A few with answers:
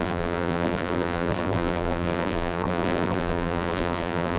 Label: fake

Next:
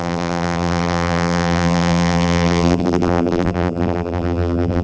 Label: fake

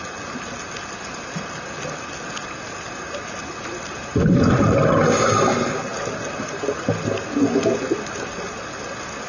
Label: real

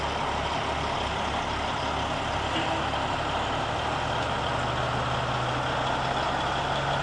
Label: real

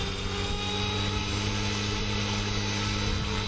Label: real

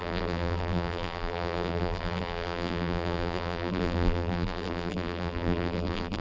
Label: fake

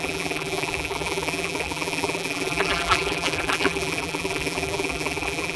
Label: fake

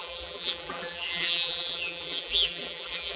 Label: fake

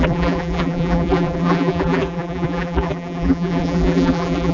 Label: fake